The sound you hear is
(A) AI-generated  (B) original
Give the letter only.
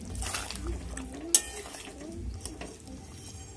B